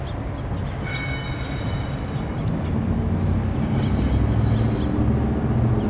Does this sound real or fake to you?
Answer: real